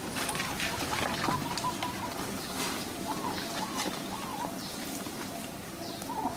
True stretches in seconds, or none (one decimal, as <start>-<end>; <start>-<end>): 4.3-4.9